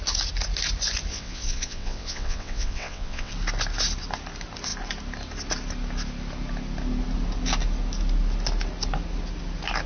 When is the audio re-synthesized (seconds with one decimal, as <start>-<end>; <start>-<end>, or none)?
1.1-3.3